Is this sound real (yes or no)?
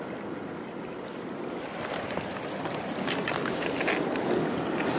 yes